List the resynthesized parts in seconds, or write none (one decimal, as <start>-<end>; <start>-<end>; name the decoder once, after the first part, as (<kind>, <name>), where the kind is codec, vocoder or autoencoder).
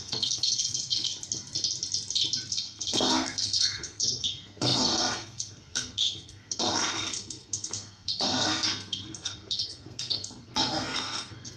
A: 0.0-1.1 (codec, SNAC); 2.5-11.6